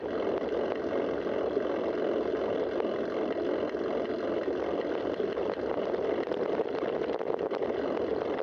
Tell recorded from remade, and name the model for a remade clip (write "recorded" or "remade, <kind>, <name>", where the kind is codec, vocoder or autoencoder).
recorded